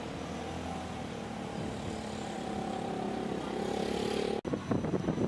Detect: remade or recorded recorded